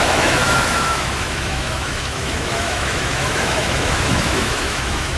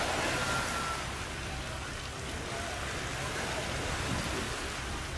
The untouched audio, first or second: second